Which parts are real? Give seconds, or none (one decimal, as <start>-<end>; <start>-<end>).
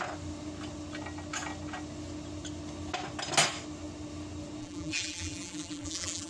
0.0-4.6